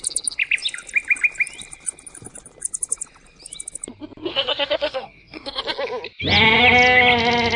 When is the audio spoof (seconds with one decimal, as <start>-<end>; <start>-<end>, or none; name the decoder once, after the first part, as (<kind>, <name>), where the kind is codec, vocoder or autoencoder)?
4.3-5.6 (codec, SNAC)